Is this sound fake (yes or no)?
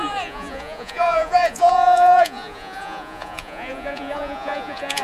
yes